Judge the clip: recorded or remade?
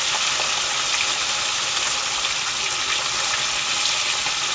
recorded